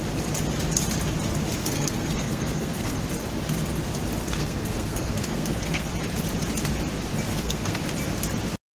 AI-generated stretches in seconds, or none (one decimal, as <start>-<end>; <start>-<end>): 1.6-3.0; 4.2-5.9; 7.3-7.8

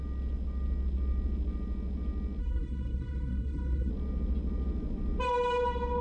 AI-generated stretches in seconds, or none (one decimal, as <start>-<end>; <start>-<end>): 2.4-3.9

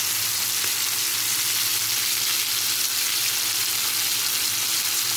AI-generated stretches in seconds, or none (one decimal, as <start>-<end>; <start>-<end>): none

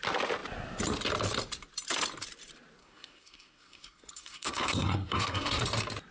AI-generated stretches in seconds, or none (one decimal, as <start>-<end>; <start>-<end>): 2.8-5.6

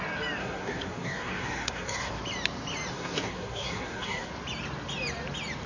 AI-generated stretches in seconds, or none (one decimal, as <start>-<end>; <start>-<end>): 0.4-2.2; 2.9-4.3

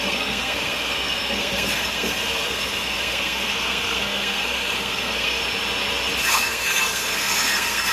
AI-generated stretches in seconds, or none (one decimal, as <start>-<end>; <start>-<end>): 0.0-5.4; 6.3-7.9